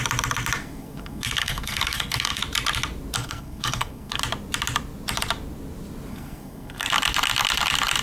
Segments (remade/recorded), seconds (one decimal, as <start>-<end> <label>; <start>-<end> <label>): 0.0-0.6 recorded; 0.6-2.4 remade; 2.4-3.2 recorded; 3.2-4.2 remade; 4.2-6.1 recorded; 6.1-6.9 remade; 6.9-8.0 recorded